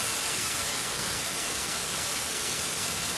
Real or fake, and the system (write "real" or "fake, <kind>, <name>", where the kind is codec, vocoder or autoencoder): fake, codec, SNAC